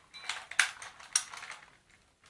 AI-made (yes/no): no